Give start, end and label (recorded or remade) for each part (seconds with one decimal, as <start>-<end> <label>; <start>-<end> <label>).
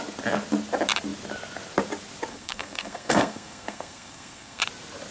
0.0-2.3 recorded; 2.3-4.6 remade; 4.6-5.1 recorded